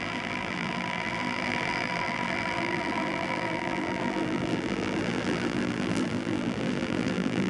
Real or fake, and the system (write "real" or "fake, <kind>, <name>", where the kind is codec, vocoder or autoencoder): fake, vocoder, BigVGAN v2